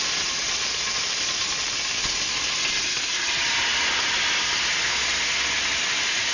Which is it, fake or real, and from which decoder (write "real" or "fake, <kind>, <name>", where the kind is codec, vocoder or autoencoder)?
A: real